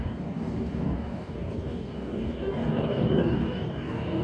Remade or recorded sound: remade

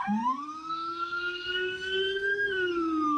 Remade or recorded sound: remade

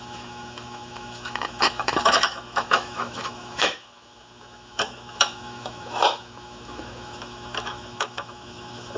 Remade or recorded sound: remade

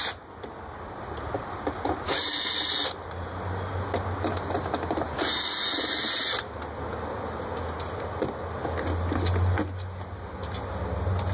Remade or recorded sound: recorded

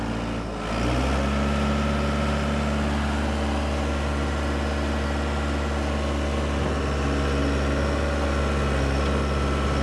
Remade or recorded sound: recorded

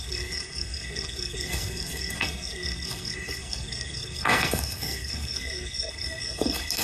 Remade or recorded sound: remade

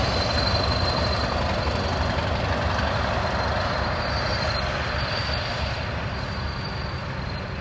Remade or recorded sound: recorded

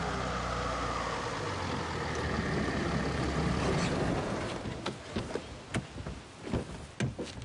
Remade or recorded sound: recorded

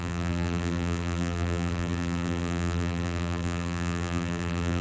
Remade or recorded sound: remade